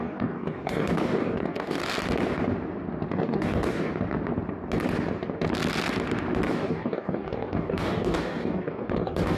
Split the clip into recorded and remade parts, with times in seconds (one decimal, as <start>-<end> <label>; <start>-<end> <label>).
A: 0.0-1.8 remade; 1.8-3.1 recorded; 3.1-3.9 remade; 3.9-6.5 recorded; 6.5-9.4 remade